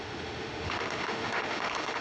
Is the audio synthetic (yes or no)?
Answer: yes